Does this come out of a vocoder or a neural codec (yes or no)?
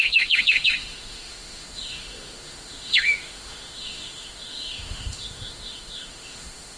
yes